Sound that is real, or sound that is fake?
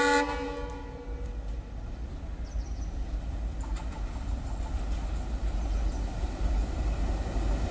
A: real